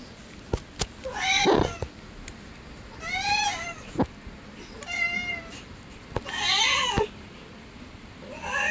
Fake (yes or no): no